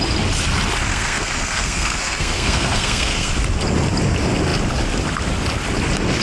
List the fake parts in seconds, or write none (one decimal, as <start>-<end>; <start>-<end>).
0.9-3.3